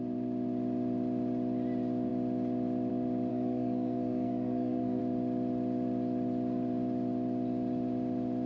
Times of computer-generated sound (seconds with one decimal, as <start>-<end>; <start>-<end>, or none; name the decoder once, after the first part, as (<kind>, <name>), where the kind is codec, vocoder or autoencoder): 3.3-5.0 (codec, SNAC)